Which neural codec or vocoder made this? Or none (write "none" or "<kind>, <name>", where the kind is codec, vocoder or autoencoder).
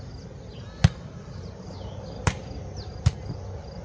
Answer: none